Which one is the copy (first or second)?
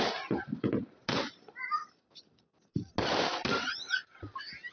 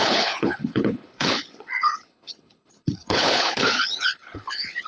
second